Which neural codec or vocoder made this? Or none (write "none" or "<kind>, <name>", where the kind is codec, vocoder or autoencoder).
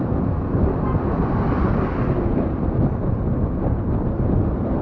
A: none